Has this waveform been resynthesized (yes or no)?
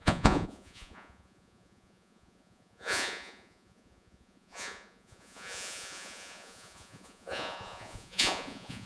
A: yes